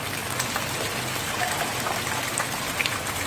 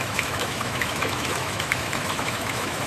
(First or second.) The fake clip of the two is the second